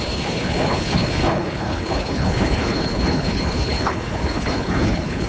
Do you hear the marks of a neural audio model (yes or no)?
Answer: yes